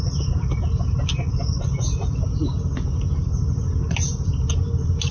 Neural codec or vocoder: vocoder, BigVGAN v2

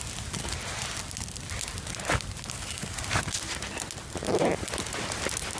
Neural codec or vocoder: none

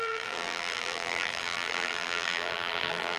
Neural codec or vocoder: vocoder, BigVGAN v2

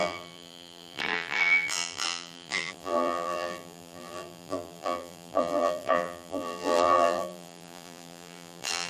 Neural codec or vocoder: vocoder, BigVGAN v2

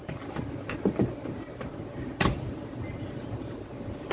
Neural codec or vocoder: vocoder, BigVGAN v2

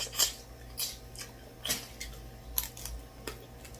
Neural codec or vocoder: none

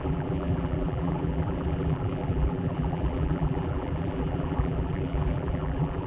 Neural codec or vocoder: vocoder, BigVGAN v2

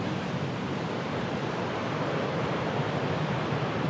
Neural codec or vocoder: vocoder, BigVGAN v2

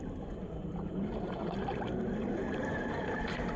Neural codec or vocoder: vocoder, BigVGAN v2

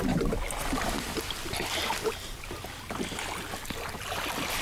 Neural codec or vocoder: none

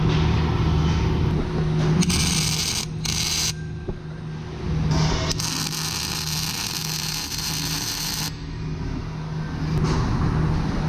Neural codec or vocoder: none